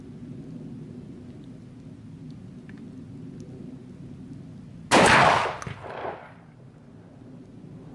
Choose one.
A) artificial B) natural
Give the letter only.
B